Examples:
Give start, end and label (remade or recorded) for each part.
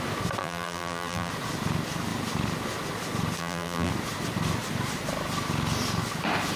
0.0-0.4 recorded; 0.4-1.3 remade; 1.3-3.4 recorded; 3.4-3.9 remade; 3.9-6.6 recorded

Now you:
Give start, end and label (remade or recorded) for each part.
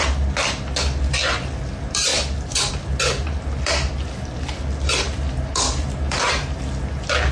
0.0-7.3 recorded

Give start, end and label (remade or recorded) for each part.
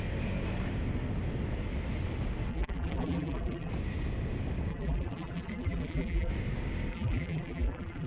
0.0-2.5 recorded; 2.5-3.7 remade; 3.7-4.7 recorded; 4.7-6.3 remade; 6.3-6.9 recorded; 6.9-8.1 remade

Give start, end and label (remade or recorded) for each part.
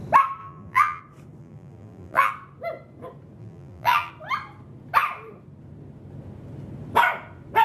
0.0-0.4 recorded; 0.4-1.0 remade; 1.0-1.4 recorded; 1.4-2.3 remade; 2.3-3.4 recorded; 3.4-4.1 remade; 4.1-7.6 recorded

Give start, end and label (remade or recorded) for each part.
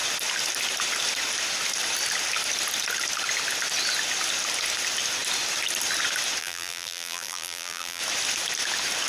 0.0-6.4 recorded; 6.4-8.0 remade; 8.0-9.1 recorded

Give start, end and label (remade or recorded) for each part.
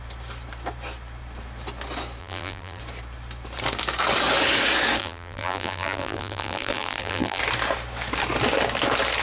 0.0-2.2 recorded; 2.2-2.8 remade; 2.8-5.0 recorded; 5.0-7.4 remade; 7.4-9.2 recorded